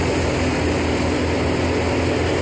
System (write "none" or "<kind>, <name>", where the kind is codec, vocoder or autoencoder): none